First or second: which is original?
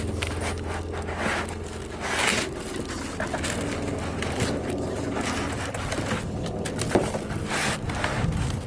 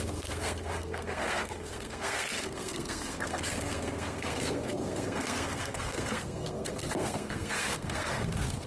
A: first